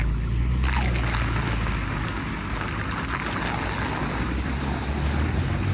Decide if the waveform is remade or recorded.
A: recorded